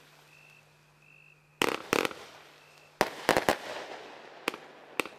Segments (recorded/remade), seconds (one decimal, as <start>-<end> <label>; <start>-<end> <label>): 0.0-5.2 recorded